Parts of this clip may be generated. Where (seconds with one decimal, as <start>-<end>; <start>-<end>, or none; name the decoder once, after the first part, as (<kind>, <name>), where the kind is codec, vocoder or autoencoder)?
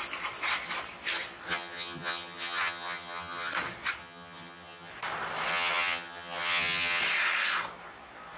1.5-3.5 (vocoder, HiFi-GAN); 4.0-4.9; 5.5-7.0